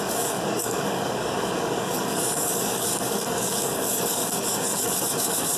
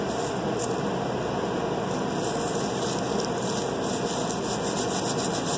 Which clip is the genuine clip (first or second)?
second